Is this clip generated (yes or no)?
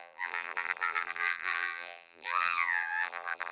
yes